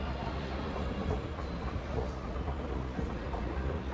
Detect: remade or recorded remade